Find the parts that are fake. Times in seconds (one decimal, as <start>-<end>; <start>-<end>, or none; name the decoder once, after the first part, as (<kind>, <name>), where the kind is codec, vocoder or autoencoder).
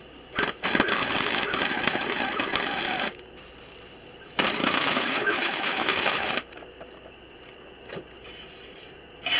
4.6-6.3 (autoencoder, DAC-VAE)